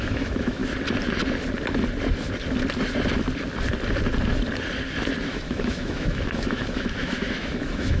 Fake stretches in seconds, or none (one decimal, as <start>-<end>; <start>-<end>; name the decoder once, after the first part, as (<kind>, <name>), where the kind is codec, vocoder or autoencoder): 0.0-0.6 (autoencoder, DAC-VAE); 5.3-8.0